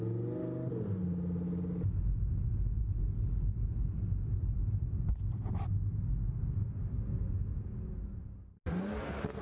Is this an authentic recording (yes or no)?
yes